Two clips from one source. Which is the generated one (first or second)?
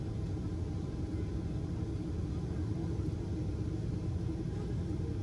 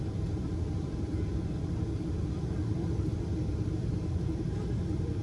second